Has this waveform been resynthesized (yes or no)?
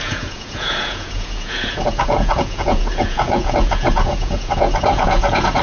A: yes